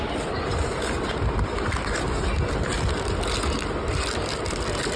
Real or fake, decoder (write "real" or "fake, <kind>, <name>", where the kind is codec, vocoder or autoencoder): real